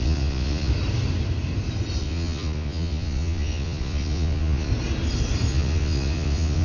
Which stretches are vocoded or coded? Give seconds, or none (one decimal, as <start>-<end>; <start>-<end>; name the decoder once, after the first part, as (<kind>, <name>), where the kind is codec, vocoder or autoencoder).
0.0-0.7 (vocoder, Vocos); 2.0-4.7; 5.5-6.6